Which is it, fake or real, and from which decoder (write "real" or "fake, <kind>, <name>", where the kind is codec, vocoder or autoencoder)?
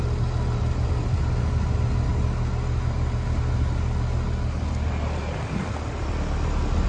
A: real